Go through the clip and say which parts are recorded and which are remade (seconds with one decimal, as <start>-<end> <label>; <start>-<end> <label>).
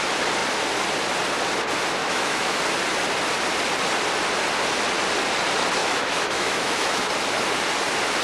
0.0-2.0 recorded; 2.0-2.6 remade; 2.6-5.8 recorded; 5.8-7.1 remade; 7.1-8.2 recorded